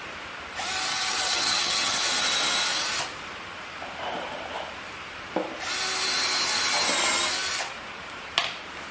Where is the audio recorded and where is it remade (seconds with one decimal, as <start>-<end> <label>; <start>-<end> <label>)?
0.0-0.9 recorded; 0.9-2.1 remade; 2.1-8.9 recorded